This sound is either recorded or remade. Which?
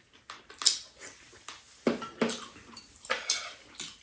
recorded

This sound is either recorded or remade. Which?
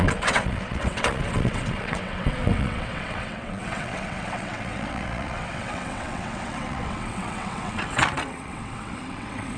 remade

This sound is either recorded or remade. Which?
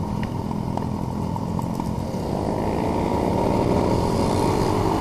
recorded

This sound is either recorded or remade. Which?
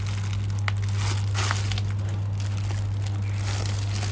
recorded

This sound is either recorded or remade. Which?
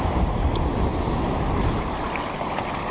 recorded